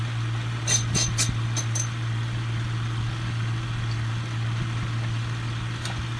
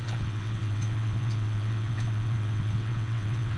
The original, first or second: first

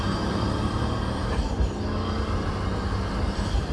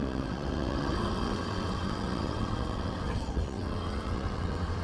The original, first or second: first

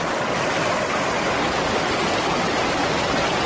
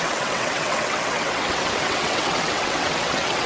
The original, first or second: first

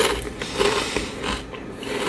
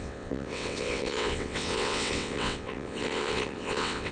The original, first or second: first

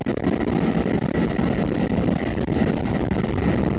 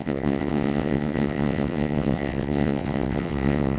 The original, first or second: first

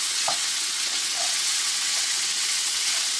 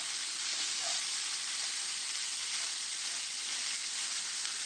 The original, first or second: second